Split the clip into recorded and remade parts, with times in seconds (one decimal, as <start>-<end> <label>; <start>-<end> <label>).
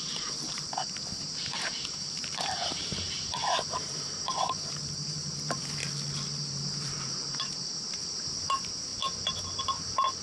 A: 0.0-5.8 remade; 5.8-6.5 recorded; 6.5-10.2 remade